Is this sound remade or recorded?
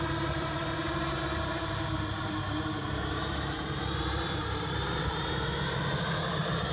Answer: remade